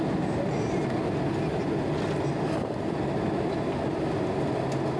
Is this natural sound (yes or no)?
yes